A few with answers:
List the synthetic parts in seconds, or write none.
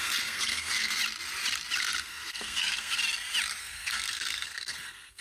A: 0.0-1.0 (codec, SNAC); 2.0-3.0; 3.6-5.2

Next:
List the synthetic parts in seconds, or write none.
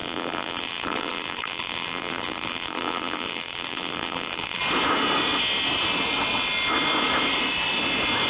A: 0.0-4.6 (vocoder, BigVGAN v2)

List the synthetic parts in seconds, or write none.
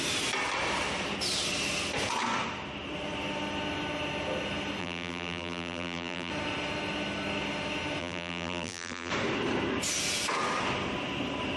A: 4.8-6.3 (vocoder, BigVGAN v2); 8.0-9.1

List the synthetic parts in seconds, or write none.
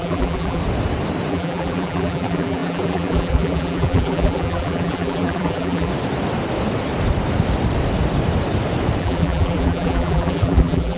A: 0.0-0.6 (vocoder, BigVGAN v2); 1.3-5.9; 9.0-11.0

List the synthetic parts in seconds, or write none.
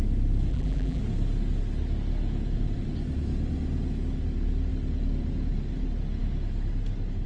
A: 0.5-1.0 (vocoder, BigVGAN v2)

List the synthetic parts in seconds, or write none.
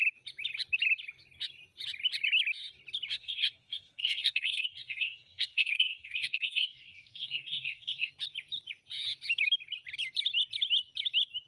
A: 3.1-8.1 (codec, SNAC)